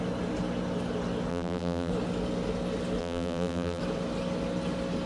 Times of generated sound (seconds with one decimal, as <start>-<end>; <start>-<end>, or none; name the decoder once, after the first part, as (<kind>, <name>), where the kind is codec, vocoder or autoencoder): 1.3-1.9 (vocoder, BigVGAN v2); 3.0-3.8